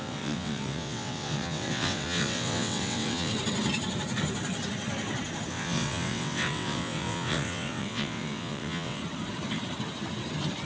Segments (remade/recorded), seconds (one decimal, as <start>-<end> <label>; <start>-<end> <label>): 0.0-3.3 remade; 3.3-5.5 recorded; 5.5-9.0 remade; 9.0-10.7 recorded